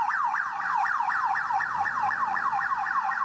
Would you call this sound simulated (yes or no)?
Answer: yes